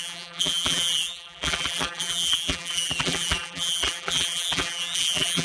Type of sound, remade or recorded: remade